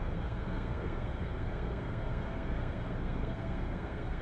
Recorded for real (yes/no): no